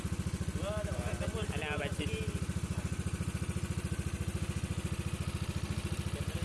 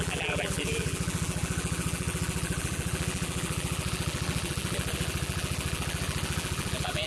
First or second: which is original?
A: first